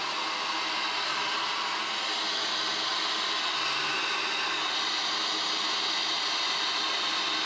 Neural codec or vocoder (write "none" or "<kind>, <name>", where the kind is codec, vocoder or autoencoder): none